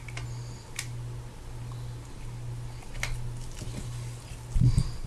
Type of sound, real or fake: real